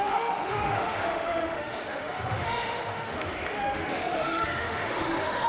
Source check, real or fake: fake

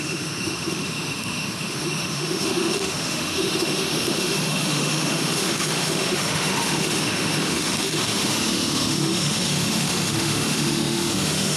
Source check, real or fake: fake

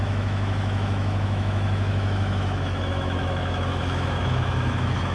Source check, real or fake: fake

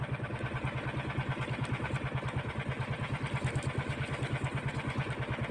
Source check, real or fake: real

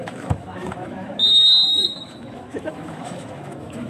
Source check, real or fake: fake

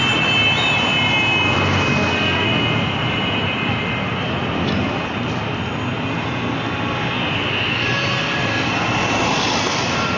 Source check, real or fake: real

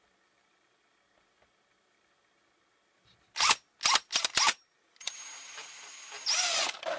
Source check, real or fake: real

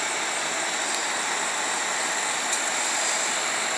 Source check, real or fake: real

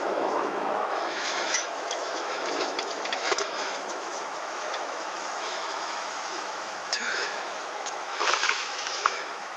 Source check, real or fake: fake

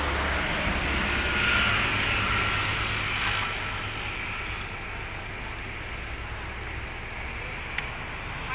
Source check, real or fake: real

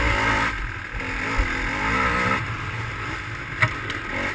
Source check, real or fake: real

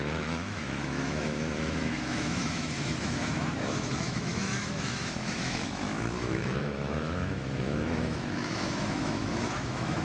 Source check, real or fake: fake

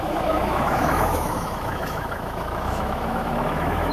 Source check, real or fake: fake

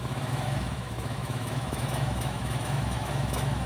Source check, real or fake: fake